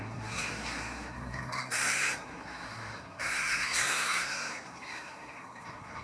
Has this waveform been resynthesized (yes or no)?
yes